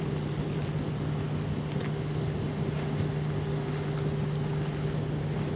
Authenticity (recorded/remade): recorded